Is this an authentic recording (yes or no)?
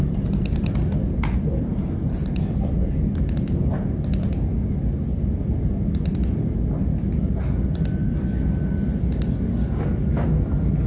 yes